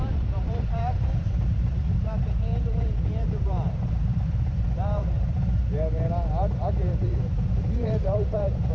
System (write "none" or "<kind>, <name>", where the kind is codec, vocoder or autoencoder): vocoder, BigVGAN v2